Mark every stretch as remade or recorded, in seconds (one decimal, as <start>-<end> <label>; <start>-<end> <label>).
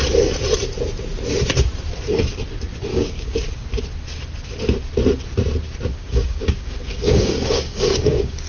0.0-2.9 recorded; 2.9-3.4 remade; 3.4-5.9 recorded; 5.9-8.5 remade